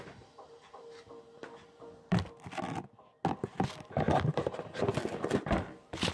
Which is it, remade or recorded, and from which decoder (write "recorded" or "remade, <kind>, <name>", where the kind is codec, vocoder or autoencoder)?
recorded